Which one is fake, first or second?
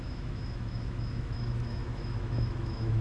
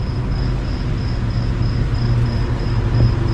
first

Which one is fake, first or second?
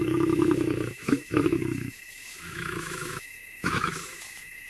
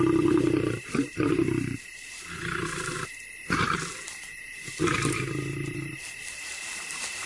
first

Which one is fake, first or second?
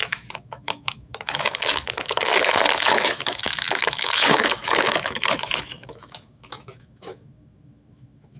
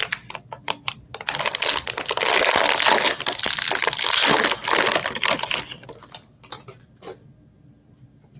first